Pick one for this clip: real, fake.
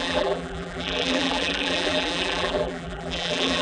fake